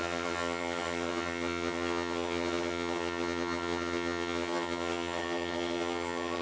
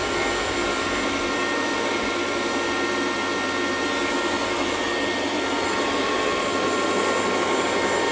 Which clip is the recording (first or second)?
second